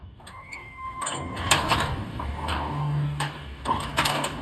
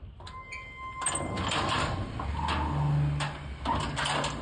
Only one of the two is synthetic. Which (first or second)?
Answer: first